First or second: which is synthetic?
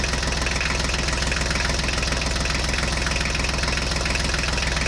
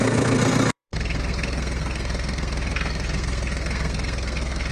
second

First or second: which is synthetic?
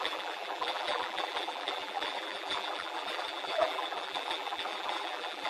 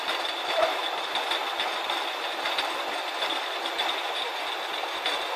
first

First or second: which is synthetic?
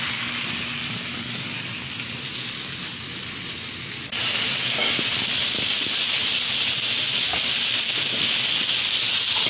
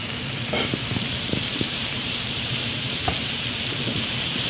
second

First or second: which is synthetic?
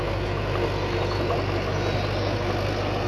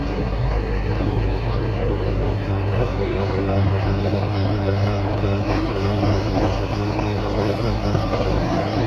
second